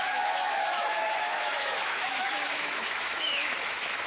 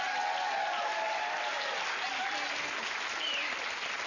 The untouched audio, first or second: second